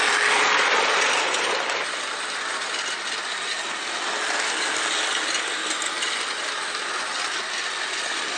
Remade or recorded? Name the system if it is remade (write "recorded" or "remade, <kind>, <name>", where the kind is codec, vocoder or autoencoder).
recorded